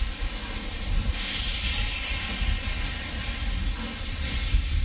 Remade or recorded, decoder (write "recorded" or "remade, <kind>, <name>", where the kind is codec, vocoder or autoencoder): recorded